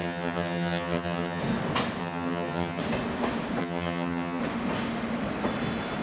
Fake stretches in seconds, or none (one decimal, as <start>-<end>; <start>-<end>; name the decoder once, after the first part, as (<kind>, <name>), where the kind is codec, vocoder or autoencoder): 0.0-1.4 (vocoder, HiFi-GAN); 2.0-2.8; 3.6-4.4